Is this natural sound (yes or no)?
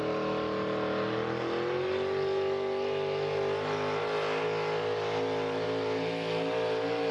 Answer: yes